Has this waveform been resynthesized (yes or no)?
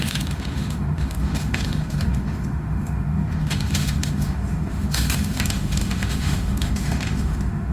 yes